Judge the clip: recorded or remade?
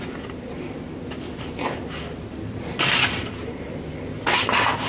recorded